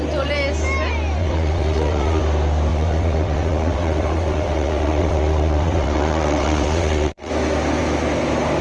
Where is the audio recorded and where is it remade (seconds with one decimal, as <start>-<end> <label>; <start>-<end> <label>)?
0.0-1.2 recorded; 1.2-2.2 remade; 2.2-2.7 recorded; 2.7-7.3 remade; 7.3-8.6 recorded